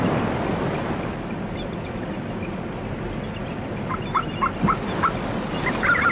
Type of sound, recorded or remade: recorded